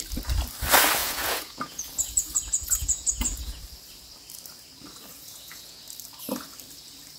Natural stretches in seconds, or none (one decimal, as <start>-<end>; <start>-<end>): 0.0-1.0; 3.6-5.1; 5.8-7.2